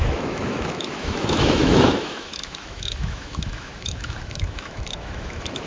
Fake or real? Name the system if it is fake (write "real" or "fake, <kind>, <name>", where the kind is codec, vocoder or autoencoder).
fake, autoencoder, DAC-VAE